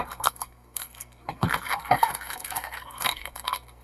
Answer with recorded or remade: remade